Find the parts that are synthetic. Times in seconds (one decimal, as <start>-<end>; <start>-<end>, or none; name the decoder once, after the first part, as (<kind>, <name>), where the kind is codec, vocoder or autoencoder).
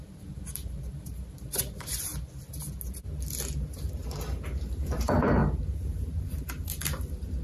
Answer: 0.0-2.1 (vocoder, BigVGAN v2); 3.9-7.4